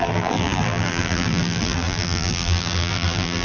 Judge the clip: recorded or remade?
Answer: remade